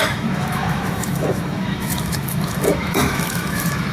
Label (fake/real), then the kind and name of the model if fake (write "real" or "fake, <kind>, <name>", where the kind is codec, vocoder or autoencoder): fake, autoencoder, DAC-VAE